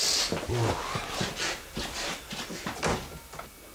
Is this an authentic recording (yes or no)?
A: yes